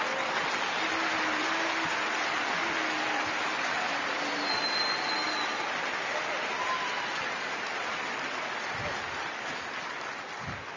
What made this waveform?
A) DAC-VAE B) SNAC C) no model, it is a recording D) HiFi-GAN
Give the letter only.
C